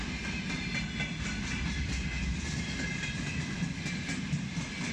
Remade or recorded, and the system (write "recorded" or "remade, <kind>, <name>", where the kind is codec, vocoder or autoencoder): recorded